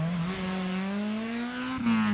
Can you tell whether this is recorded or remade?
recorded